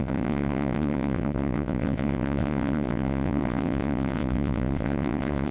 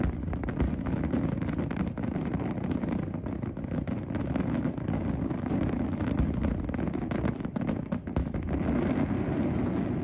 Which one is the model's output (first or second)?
first